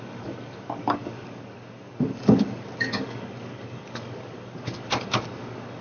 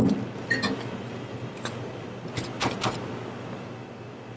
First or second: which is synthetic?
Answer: first